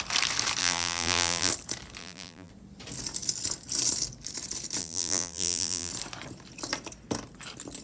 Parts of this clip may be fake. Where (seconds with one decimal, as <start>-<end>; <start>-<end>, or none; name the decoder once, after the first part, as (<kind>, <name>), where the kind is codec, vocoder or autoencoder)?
0.6-1.5 (vocoder, BigVGAN v2); 2.0-2.5; 4.8-5.9

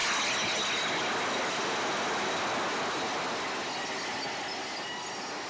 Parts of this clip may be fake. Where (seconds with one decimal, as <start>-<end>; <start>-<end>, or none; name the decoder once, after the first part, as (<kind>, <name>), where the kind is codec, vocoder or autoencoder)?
none